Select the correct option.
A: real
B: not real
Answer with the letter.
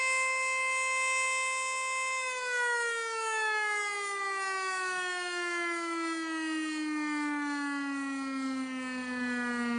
A